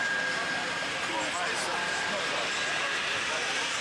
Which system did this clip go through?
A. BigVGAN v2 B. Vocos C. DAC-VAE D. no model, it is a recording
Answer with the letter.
D